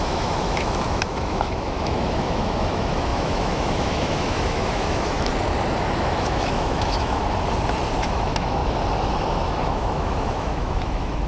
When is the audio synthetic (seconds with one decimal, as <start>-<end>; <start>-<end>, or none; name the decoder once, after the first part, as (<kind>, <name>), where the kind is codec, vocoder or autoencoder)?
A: 0.0-5.3 (autoencoder, DAC-VAE); 6.0-7.2; 8.0-8.6; 9.3-11.3

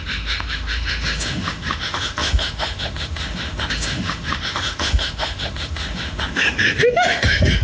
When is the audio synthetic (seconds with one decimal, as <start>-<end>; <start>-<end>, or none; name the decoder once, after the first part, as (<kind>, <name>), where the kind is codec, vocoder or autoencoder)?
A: 0.0-7.6 (autoencoder, DAC-VAE)

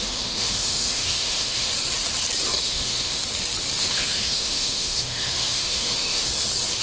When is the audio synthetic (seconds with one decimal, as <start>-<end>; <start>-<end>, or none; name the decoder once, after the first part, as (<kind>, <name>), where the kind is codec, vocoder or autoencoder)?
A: 0.0-1.7 (autoencoder, DAC-VAE); 2.6-3.2; 3.8-6.3

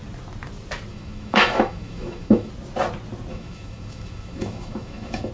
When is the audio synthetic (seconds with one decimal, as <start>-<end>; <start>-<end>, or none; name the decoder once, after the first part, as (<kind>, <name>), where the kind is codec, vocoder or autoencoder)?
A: 0.9-2.5 (autoencoder, DAC-VAE); 3.3-5.3

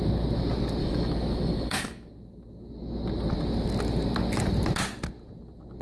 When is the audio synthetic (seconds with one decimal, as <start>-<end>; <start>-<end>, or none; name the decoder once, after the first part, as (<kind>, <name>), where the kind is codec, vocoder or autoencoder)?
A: 0.8-2.1 (autoencoder, DAC-VAE)

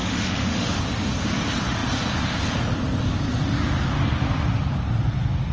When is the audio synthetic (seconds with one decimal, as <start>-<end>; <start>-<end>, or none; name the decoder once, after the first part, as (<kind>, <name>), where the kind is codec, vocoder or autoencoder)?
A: 0.0-0.8 (autoencoder, DAC-VAE)